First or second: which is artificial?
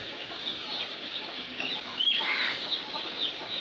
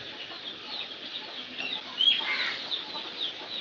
first